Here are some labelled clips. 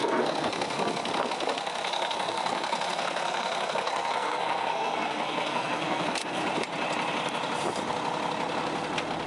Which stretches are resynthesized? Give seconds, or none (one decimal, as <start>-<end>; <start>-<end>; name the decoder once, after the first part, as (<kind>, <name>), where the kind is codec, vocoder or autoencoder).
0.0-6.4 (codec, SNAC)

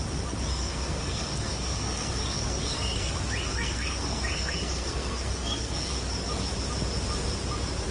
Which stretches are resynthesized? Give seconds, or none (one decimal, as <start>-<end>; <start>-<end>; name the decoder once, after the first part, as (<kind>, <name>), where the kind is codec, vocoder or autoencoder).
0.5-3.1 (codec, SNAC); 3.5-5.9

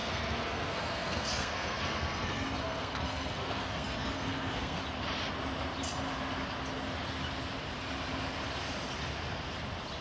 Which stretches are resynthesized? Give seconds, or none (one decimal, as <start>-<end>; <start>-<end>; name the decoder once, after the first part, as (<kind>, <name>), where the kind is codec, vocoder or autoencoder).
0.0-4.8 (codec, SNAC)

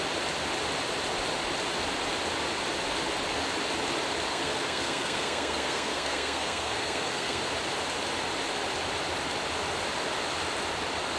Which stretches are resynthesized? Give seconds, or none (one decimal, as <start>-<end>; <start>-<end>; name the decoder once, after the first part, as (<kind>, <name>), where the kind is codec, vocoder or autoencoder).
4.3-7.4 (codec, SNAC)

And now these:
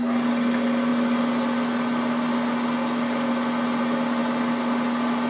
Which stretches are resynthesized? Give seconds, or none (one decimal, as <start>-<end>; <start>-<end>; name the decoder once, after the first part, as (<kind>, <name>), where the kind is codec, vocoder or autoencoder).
none

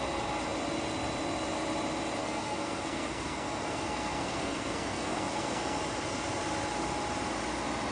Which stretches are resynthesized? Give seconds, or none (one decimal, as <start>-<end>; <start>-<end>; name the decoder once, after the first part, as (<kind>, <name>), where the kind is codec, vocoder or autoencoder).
2.2-5.8 (codec, SNAC)

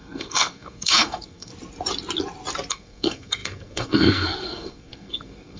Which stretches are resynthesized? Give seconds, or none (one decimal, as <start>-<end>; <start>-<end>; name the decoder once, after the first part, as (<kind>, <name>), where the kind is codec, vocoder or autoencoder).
0.0-1.5 (codec, SNAC); 2.7-5.6